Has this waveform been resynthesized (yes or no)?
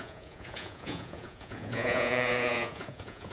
yes